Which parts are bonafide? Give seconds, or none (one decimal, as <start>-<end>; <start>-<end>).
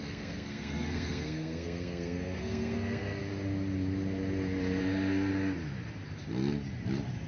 3.2-4.8; 5.3-7.3